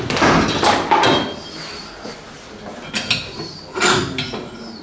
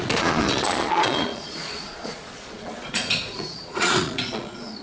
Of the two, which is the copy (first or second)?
second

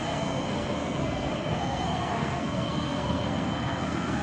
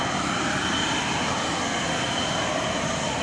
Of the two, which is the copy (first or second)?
first